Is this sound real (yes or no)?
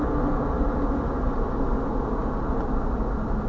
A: yes